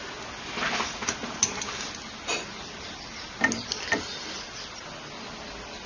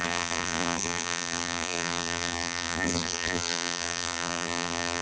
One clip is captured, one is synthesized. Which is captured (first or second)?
first